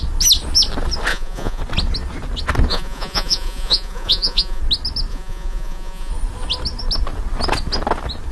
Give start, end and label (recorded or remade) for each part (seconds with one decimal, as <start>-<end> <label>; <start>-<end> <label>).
0.0-1.1 recorded; 1.1-1.6 remade; 1.6-2.7 recorded; 2.7-4.6 remade; 4.6-5.1 recorded; 5.1-6.1 remade; 6.1-8.3 recorded